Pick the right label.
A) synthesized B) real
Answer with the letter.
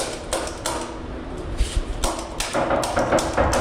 B